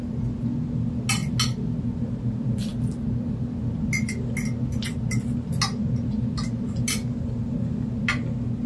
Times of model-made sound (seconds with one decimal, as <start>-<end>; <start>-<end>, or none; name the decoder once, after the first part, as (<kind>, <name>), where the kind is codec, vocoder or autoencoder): none